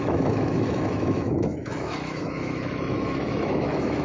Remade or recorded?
remade